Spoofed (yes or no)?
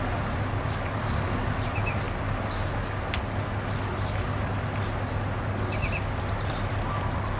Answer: no